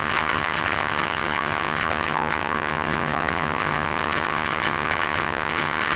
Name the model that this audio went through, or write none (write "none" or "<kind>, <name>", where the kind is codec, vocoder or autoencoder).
vocoder, HiFi-GAN